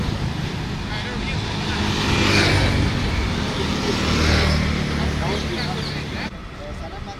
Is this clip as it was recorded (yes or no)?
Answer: yes